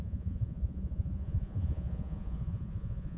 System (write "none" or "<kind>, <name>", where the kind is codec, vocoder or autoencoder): vocoder, Vocos